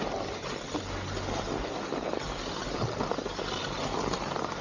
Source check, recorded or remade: recorded